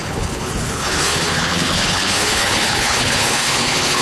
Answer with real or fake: fake